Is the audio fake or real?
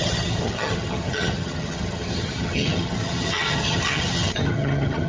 fake